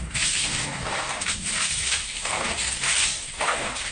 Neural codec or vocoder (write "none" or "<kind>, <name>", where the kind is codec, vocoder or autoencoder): codec, DAC